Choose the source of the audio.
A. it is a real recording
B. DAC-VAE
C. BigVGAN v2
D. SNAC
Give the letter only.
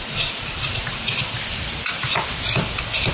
C